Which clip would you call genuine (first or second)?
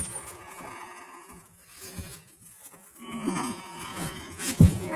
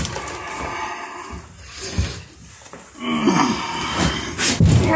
second